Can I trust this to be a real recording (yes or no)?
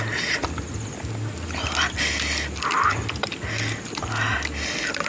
yes